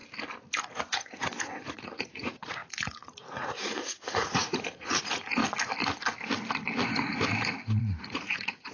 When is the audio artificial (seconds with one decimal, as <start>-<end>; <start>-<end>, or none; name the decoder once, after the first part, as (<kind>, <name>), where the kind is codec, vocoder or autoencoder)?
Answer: 0.6-5.4 (vocoder, Vocos); 7.8-8.7